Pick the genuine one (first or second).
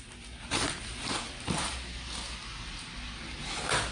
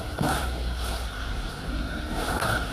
first